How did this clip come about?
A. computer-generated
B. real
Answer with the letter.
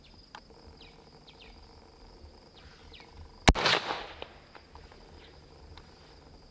B